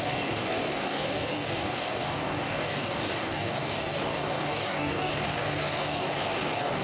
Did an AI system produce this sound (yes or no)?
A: yes